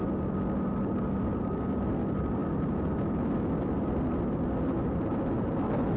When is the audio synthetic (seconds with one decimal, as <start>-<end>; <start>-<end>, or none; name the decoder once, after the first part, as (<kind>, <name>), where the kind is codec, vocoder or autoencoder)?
none